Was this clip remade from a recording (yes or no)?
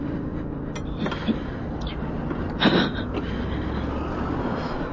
no